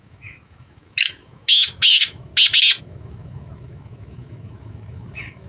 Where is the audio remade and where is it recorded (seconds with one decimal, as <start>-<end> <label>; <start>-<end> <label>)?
0.0-2.3 remade; 2.3-2.8 recorded; 2.8-5.5 remade